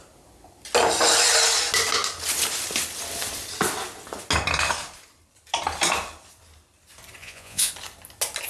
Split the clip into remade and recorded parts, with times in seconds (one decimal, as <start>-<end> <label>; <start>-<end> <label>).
0.0-7.2 recorded; 7.2-7.7 remade; 7.7-8.5 recorded